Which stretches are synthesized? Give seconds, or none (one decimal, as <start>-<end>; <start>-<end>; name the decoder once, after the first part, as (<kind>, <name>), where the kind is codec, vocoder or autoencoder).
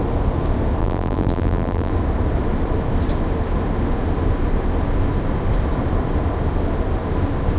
0.8-1.9 (vocoder, BigVGAN v2)